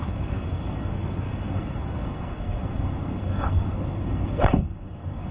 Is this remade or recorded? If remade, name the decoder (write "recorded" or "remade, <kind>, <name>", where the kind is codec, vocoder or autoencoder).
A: remade, codec, SNAC